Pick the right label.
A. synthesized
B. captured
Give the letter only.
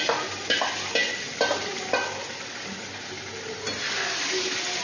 B